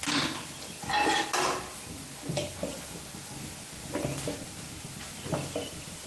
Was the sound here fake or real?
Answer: real